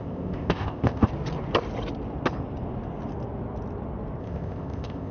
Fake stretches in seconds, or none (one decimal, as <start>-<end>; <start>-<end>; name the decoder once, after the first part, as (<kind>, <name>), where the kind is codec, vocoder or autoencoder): 0.0-1.1 (codec, ZipCodec); 4.2-5.1